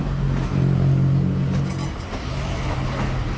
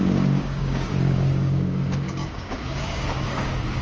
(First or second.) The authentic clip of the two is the first